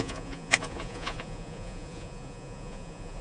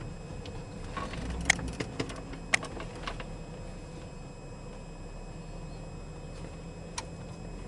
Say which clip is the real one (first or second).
second